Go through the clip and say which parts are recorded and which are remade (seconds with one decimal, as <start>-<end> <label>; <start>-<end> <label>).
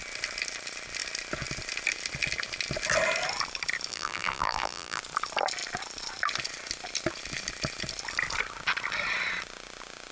0.0-3.9 recorded; 3.9-5.0 remade; 5.0-10.1 recorded